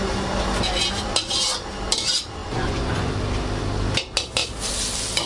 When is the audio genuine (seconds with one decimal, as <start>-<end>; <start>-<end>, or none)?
0.0-2.4; 3.1-5.3